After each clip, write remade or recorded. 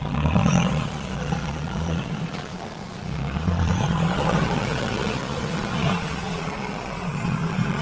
remade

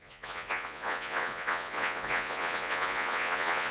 remade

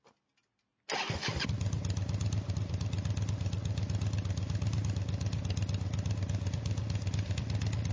recorded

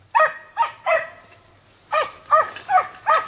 recorded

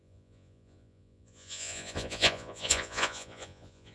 remade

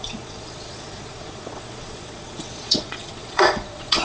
remade